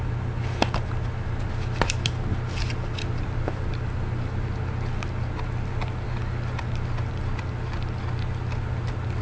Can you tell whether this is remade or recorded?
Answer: recorded